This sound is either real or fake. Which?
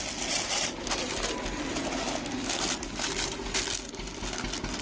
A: real